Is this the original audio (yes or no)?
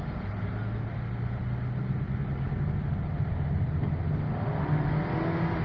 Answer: yes